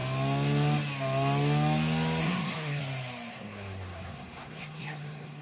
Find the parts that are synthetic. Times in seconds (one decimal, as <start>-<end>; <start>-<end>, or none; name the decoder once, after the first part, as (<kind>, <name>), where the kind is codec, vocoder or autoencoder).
2.2-2.8 (codec, SNAC); 3.3-5.4